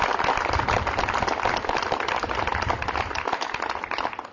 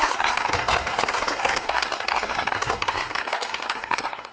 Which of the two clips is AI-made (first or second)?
second